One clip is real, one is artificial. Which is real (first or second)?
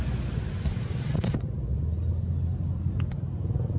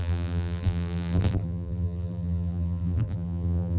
first